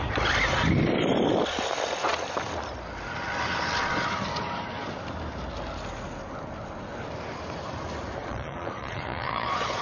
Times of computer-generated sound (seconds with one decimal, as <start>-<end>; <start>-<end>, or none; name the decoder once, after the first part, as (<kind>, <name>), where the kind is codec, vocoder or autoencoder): 8.2-9.8 (vocoder, Vocos)